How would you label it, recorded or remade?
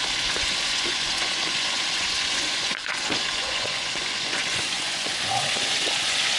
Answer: remade